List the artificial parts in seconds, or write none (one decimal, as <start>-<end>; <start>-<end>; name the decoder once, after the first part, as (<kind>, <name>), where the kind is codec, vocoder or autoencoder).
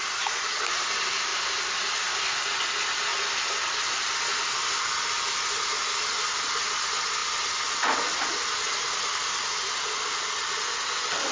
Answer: none